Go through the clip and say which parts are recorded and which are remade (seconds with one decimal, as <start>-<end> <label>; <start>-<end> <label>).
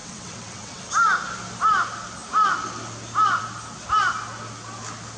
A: 0.0-0.9 remade; 0.9-5.2 recorded